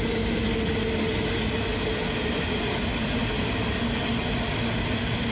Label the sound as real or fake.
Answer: real